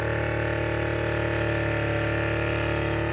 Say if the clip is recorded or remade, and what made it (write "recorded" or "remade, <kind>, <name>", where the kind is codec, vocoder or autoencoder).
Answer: recorded